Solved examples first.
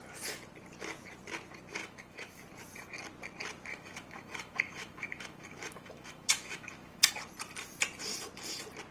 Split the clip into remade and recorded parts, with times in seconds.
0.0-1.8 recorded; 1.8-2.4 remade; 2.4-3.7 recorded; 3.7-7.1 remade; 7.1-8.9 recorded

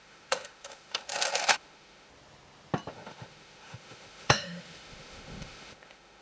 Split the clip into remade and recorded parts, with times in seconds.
0.0-2.1 remade; 2.1-2.9 recorded; 2.9-6.2 remade

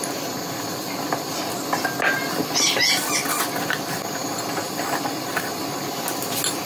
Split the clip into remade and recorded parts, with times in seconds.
0.0-6.7 recorded